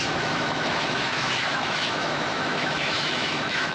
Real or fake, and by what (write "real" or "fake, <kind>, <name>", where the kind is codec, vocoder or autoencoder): fake, autoencoder, DAC-VAE